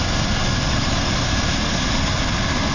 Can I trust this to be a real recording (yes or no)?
yes